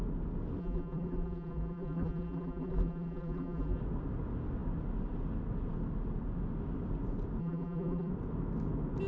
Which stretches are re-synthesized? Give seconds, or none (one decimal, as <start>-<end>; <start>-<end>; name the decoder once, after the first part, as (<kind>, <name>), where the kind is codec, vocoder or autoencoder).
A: 0.6-3.8 (vocoder, BigVGAN v2); 7.4-8.1